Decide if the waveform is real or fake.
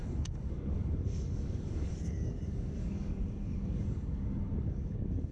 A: fake